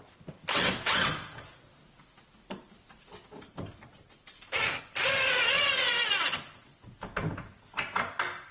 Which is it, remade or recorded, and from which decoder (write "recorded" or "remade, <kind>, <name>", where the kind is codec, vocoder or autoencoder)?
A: recorded